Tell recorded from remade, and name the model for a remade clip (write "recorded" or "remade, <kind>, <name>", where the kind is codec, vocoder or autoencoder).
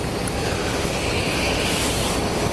recorded